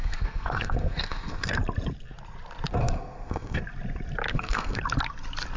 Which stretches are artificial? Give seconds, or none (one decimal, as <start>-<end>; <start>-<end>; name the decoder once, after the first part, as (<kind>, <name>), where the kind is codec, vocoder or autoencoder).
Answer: 0.0-1.6 (codec, SNAC); 2.8-3.6; 4.3-4.8